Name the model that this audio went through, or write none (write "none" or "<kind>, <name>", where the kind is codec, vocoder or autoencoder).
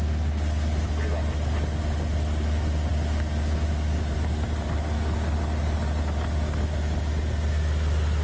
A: none